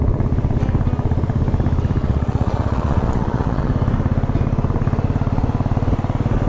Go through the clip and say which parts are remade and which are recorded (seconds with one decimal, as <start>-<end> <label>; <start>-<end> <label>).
0.0-2.0 recorded; 2.0-3.7 remade; 3.7-6.5 recorded